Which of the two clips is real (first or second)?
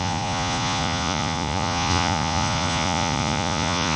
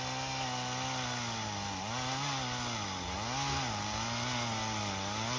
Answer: second